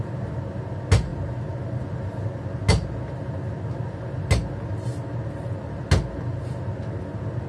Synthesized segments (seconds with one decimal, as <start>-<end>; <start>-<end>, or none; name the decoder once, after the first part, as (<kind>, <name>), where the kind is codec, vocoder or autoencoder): none